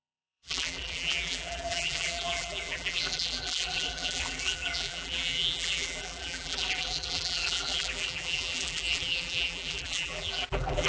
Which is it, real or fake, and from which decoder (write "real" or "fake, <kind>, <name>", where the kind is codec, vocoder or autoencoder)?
fake, vocoder, BigVGAN v2